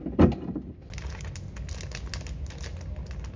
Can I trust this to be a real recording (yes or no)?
yes